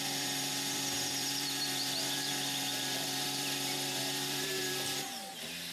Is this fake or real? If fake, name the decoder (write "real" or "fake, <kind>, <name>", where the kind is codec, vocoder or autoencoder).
fake, vocoder, BigVGAN v2